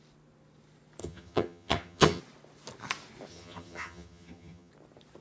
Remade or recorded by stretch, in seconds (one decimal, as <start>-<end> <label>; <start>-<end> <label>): 0.0-1.0 recorded; 1.0-2.2 remade; 2.2-3.3 recorded; 3.3-4.7 remade; 4.7-5.2 recorded